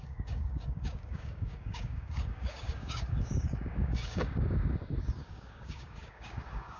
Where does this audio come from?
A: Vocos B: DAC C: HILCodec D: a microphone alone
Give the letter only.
B